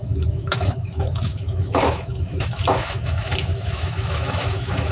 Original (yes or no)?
no